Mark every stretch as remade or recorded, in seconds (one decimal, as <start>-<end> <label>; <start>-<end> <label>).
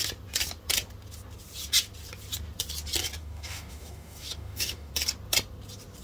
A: 0.0-3.2 recorded; 3.2-4.9 remade; 4.9-6.0 recorded